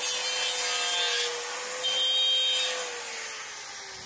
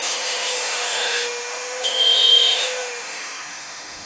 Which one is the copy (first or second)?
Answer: second